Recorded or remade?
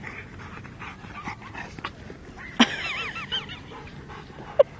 recorded